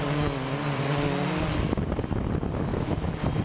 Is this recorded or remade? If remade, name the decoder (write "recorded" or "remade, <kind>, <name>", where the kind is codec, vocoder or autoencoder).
recorded